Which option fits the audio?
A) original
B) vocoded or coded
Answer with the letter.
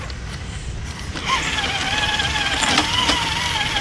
A